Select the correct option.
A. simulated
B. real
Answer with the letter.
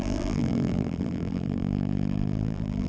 A